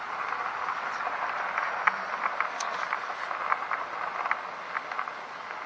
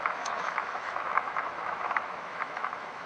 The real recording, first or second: first